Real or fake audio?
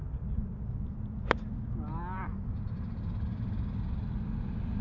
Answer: real